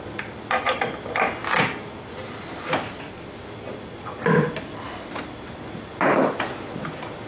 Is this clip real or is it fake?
real